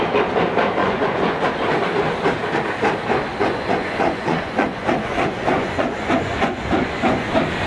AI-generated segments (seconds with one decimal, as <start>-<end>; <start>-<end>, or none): 0.8-1.5; 3.3-7.3